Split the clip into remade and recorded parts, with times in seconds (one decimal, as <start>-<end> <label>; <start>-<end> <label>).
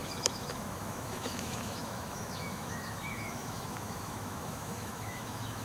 0.0-5.6 remade